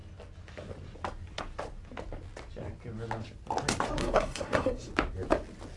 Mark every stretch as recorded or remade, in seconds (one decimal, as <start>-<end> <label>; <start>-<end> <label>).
0.0-4.0 recorded; 4.0-4.9 remade; 4.9-5.8 recorded

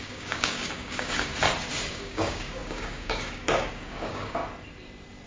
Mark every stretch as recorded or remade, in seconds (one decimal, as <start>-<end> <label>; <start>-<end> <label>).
0.0-1.3 remade; 1.3-1.9 recorded; 1.9-4.4 remade; 4.4-5.3 recorded

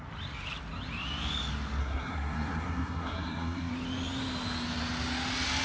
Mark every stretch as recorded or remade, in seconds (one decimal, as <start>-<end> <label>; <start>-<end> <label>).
0.0-1.8 recorded; 1.8-3.7 remade; 3.7-5.6 recorded

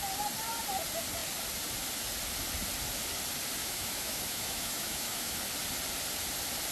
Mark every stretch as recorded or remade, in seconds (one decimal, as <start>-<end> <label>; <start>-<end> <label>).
0.0-3.6 recorded; 3.6-5.4 remade; 5.4-6.7 recorded

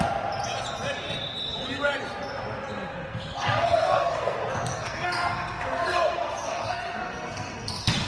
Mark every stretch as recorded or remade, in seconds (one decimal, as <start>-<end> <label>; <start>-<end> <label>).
0.0-2.9 recorded; 2.9-8.1 remade